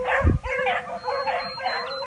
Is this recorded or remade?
recorded